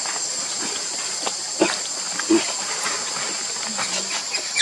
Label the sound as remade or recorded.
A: recorded